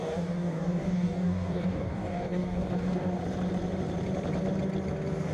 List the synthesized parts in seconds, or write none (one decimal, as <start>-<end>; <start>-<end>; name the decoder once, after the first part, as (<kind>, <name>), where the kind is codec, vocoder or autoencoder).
0.0-3.2 (codec, DAC)